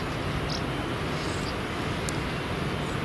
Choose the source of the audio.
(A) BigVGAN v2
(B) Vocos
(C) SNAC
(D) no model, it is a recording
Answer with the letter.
D